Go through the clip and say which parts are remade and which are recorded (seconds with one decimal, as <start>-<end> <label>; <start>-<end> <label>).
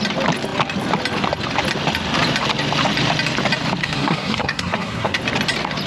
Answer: 0.0-3.8 recorded; 3.8-5.2 remade; 5.2-5.9 recorded